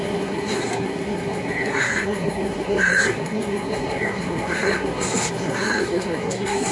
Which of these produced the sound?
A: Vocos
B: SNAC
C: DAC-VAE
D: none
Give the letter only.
B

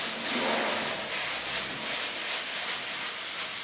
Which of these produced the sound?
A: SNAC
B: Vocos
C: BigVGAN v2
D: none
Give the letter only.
D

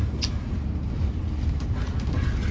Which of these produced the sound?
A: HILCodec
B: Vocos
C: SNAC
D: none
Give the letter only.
D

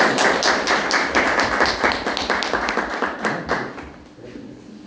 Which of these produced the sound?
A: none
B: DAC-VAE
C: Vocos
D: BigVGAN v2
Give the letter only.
A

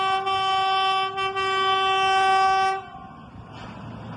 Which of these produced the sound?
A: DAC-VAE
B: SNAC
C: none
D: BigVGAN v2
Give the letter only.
C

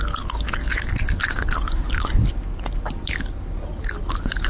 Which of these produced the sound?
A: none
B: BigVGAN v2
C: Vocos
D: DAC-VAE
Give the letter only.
A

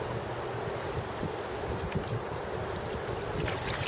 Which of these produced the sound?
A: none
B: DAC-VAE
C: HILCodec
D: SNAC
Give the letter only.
A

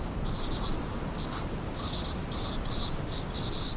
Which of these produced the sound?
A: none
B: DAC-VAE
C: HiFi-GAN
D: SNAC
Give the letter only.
A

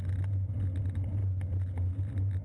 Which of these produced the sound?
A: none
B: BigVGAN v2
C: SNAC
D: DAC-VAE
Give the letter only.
A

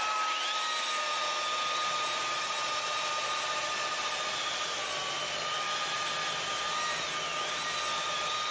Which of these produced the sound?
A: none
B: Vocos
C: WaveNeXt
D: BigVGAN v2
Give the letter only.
A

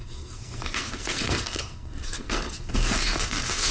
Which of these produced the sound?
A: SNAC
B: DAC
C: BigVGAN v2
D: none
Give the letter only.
A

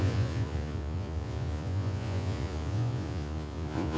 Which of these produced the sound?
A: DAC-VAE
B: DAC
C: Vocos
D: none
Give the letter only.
C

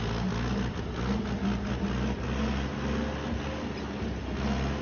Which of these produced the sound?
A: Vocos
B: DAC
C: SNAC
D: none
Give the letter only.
D